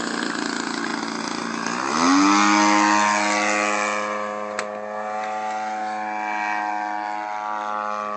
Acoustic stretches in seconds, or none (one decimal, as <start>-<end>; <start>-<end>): 0.0-8.2